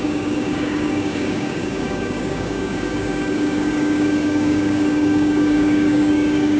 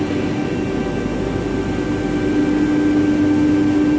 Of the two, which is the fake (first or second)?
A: first